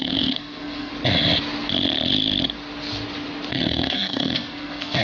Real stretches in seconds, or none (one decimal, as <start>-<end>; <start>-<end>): 0.9-3.5